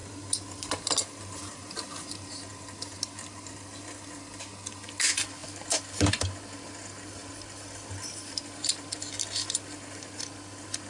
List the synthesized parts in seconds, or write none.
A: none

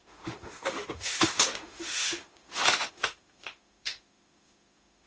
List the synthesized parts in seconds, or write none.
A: 0.0-5.1 (autoencoder, DAC-VAE)

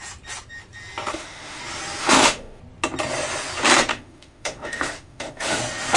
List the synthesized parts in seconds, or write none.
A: 1.1-1.6 (autoencoder, DAC-VAE); 2.0-2.6; 3.9-5.6